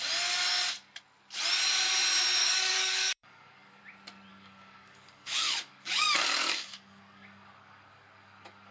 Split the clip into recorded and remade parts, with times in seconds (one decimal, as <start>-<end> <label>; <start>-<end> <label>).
0.0-2.4 recorded; 2.4-3.8 remade; 3.8-4.3 recorded; 4.3-8.7 remade